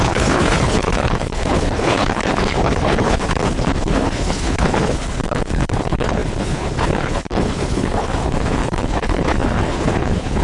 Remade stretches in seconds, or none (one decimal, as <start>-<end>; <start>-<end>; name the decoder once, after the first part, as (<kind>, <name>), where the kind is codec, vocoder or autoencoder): 0.0-10.4 (codec, HILCodec)